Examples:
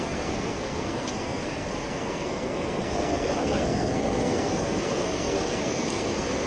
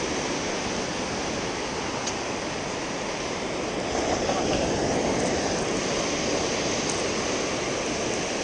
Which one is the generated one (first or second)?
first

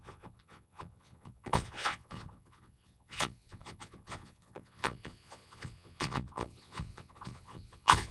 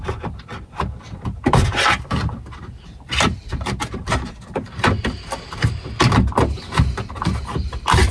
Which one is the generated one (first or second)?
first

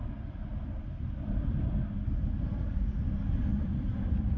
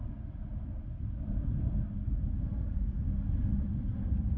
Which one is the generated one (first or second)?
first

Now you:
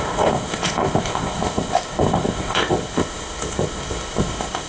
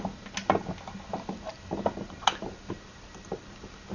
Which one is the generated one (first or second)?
first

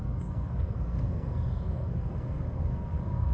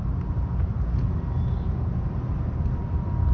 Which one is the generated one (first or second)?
first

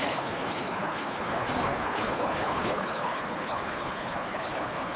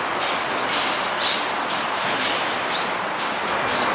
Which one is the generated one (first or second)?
first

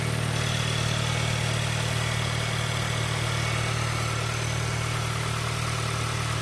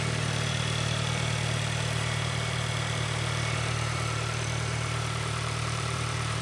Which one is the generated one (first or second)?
second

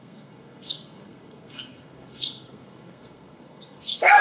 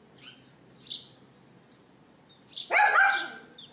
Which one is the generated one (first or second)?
first